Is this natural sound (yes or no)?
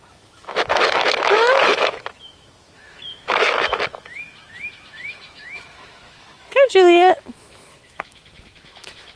no